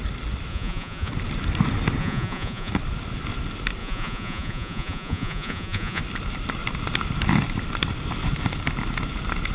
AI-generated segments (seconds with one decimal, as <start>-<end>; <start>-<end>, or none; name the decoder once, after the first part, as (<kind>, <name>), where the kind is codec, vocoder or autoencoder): 0.5-1.1 (vocoder, Vocos); 2.0-2.7; 3.8-6.0